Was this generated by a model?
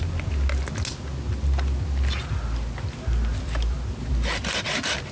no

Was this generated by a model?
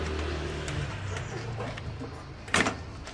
no